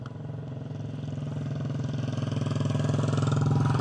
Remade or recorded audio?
recorded